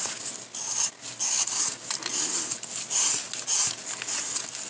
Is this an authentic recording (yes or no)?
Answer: yes